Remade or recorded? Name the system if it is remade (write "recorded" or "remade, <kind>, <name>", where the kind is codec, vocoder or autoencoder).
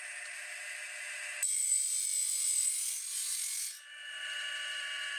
recorded